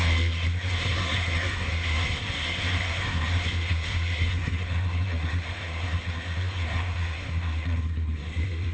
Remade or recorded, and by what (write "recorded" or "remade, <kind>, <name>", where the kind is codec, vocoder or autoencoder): remade, codec, SNAC